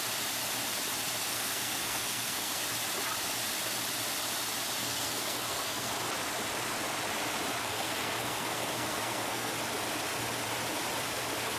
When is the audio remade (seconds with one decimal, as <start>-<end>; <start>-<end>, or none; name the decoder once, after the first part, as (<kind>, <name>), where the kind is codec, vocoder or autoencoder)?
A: 1.3-2.6 (codec, SNAC); 4.8-5.9; 7.6-9.5